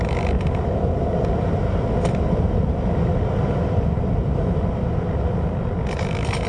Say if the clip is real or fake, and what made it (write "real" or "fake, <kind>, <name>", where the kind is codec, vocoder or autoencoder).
real